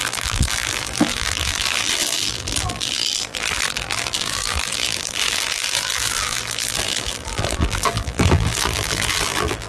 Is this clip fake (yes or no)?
yes